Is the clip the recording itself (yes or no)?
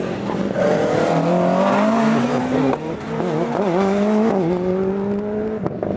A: yes